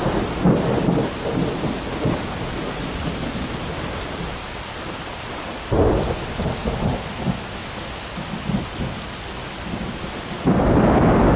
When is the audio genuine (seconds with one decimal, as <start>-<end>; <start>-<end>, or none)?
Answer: 0.0-11.4

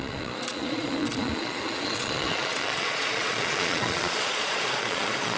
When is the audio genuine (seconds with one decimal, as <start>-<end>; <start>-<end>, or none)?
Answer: none